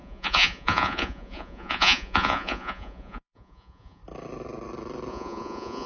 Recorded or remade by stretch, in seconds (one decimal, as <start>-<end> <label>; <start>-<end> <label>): 0.0-4.0 remade; 4.0-5.1 recorded; 5.1-5.9 remade